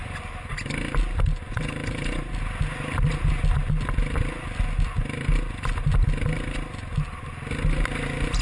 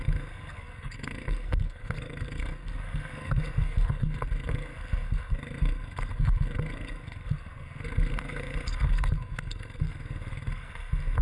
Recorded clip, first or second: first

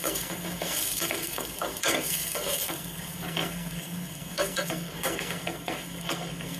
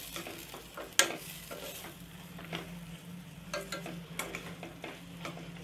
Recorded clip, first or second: second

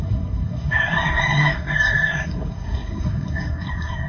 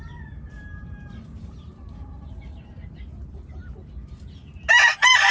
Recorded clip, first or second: second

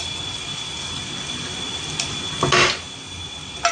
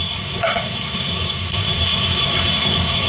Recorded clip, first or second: first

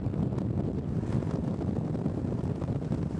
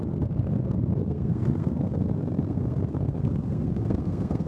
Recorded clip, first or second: first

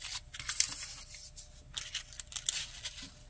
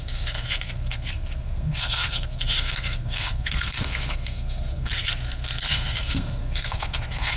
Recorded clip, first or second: first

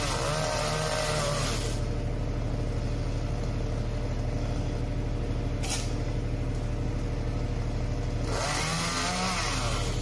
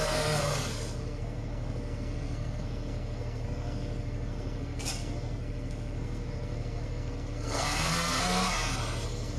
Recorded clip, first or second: first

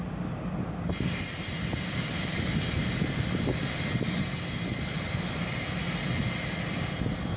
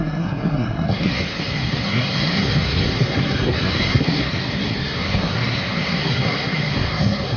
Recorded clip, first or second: first